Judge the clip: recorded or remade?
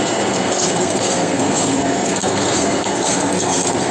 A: remade